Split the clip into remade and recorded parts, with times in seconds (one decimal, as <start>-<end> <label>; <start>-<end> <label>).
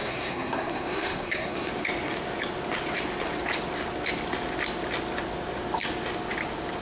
0.0-1.7 remade; 1.7-6.8 recorded